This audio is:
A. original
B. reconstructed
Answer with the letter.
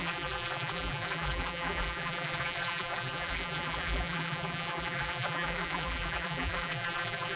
B